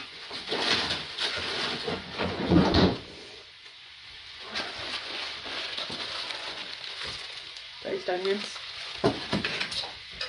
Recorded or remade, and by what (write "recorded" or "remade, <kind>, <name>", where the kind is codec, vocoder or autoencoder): remade, vocoder, Vocos